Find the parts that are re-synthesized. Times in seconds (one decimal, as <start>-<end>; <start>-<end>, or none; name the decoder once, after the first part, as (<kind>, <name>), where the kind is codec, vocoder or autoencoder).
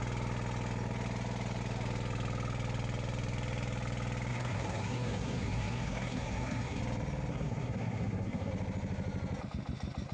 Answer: 4.3-6.8 (codec, SNAC); 7.3-8.5